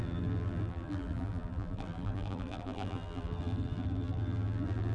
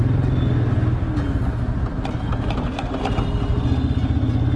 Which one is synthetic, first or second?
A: first